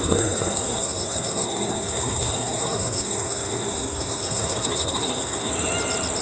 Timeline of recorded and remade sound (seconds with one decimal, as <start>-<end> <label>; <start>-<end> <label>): 0.0-5.5 remade; 5.5-6.2 recorded